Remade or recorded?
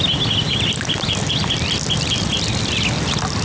recorded